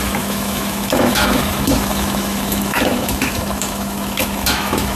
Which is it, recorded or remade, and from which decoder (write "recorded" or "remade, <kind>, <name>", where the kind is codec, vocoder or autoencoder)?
remade, autoencoder, DAC-VAE